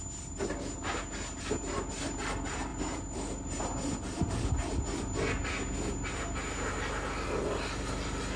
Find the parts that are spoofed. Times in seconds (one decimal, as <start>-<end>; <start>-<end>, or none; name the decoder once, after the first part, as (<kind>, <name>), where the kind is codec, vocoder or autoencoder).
none